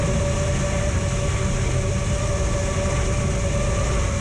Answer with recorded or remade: recorded